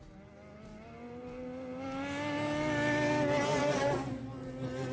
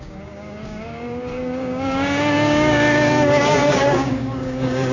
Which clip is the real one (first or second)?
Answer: first